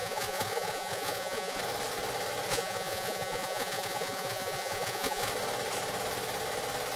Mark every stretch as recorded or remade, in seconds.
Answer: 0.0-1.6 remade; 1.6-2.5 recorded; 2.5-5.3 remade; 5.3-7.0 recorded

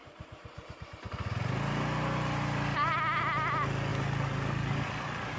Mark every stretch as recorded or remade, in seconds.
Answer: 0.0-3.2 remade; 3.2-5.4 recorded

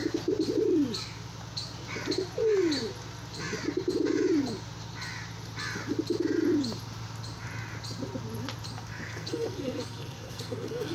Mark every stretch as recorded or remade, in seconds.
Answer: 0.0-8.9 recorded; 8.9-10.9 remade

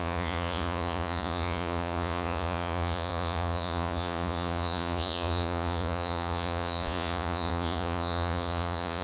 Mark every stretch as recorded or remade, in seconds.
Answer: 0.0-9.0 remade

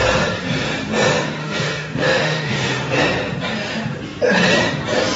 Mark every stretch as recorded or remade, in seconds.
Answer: 0.0-1.4 recorded; 1.4-3.0 remade; 3.0-5.2 recorded

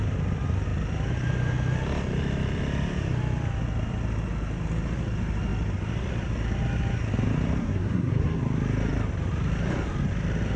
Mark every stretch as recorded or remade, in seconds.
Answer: 0.0-7.6 recorded; 7.6-8.4 remade; 8.4-10.6 recorded

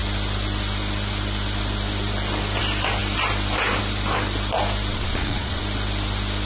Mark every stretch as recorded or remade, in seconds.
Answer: 0.0-4.9 recorded; 4.9-5.6 remade; 5.6-6.5 recorded

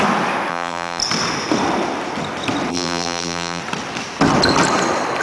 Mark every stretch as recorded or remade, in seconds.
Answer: 0.0-0.5 recorded; 0.5-1.0 remade; 1.0-2.7 recorded; 2.7-3.6 remade; 3.6-5.2 recorded